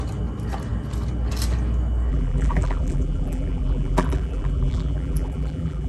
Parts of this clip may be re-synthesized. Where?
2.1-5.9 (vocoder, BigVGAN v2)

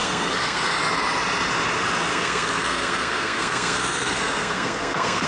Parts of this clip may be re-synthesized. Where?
0.0-0.8 (codec, SNAC); 2.1-5.3

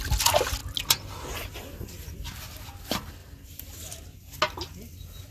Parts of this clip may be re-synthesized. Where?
3.2-4.4 (vocoder, BigVGAN v2)

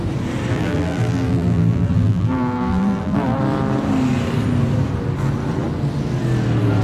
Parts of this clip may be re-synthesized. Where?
0.5-3.4 (vocoder, BigVGAN v2)

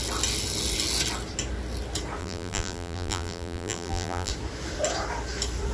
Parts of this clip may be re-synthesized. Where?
2.2-4.3 (vocoder, BigVGAN v2)